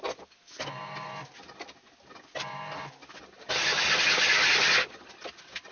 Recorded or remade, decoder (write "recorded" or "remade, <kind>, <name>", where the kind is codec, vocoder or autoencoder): recorded